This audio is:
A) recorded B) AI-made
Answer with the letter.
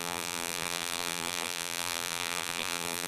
B